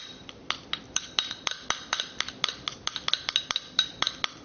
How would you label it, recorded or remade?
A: recorded